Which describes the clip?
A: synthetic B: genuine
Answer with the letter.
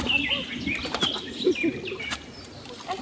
B